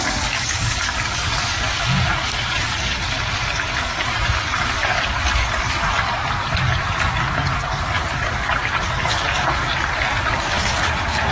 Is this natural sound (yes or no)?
no